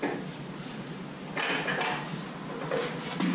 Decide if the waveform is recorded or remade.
recorded